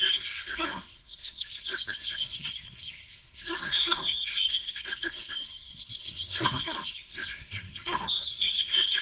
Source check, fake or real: fake